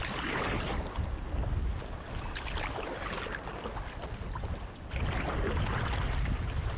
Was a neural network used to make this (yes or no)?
no